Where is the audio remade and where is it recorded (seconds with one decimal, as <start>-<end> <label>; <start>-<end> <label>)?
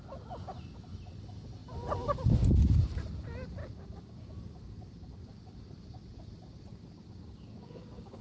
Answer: 0.0-3.6 recorded; 3.6-5.3 remade; 5.3-6.7 recorded; 6.7-8.2 remade